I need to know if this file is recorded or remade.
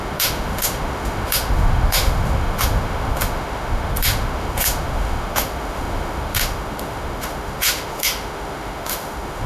remade